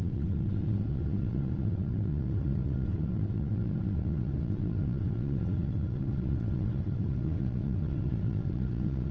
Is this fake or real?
fake